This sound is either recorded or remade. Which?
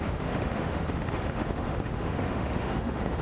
remade